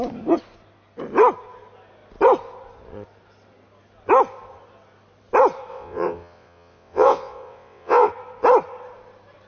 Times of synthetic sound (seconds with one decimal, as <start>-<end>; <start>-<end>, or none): 5.7-8.1

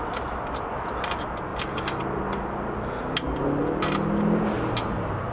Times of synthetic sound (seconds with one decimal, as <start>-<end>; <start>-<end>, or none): none

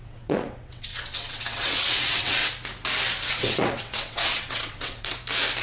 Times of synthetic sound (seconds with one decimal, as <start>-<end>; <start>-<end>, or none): 0.0-2.4; 3.3-5.1

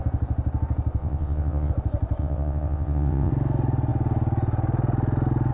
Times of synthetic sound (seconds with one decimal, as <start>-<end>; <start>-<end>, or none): 1.0-1.7; 2.2-3.3

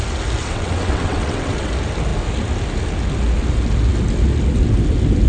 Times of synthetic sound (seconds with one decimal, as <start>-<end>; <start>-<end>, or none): 0.4-1.7